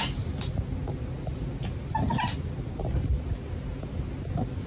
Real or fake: real